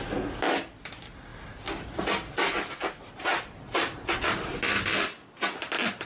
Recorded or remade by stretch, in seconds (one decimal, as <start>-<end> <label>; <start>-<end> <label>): 0.0-6.1 recorded